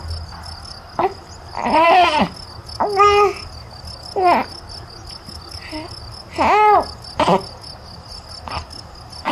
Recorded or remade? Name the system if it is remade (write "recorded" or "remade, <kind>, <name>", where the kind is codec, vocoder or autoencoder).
recorded